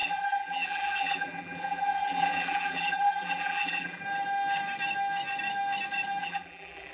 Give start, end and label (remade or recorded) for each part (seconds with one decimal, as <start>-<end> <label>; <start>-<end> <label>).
0.0-4.0 remade; 4.0-6.2 recorded; 6.2-6.9 remade